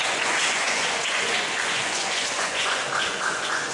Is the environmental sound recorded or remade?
remade